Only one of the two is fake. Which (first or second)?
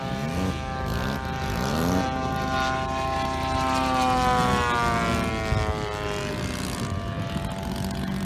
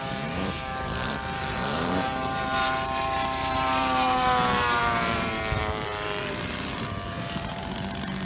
second